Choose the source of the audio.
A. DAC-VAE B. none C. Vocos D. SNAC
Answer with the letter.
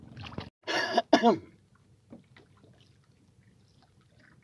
B